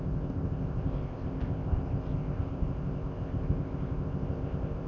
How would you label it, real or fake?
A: fake